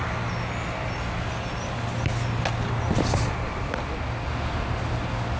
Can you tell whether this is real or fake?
real